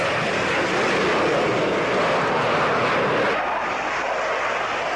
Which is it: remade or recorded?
recorded